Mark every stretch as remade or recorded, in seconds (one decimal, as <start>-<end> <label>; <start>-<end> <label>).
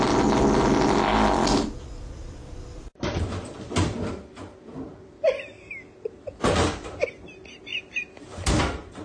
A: 0.0-1.1 recorded; 1.1-5.7 remade; 5.7-7.7 recorded; 7.7-8.6 remade; 8.6-9.0 recorded